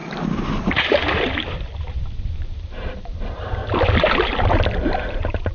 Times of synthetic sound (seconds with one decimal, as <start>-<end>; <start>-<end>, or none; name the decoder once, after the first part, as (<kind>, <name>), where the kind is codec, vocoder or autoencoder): 0.0-3.6 (vocoder, BigVGAN v2); 4.1-5.5